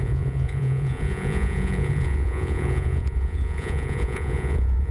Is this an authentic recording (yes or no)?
no